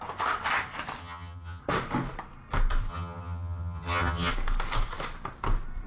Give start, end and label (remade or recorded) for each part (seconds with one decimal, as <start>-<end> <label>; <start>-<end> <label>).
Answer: 0.0-1.0 recorded; 1.0-1.6 remade; 1.6-2.9 recorded; 2.9-4.3 remade; 4.3-5.9 recorded